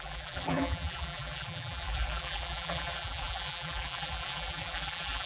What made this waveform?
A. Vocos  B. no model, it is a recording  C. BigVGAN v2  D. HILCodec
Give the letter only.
C